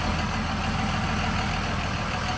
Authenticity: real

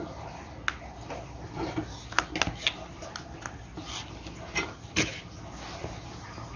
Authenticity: real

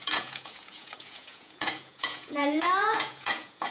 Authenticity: fake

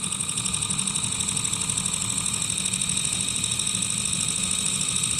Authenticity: fake